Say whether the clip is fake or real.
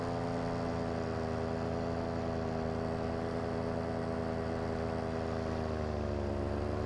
real